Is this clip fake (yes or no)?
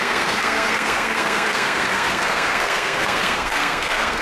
yes